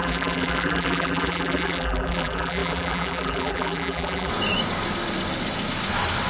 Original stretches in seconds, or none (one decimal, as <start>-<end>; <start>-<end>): 4.3-6.3